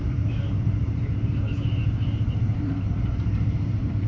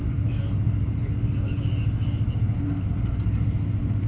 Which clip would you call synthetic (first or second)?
first